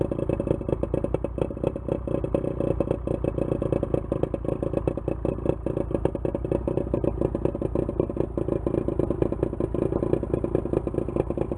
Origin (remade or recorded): recorded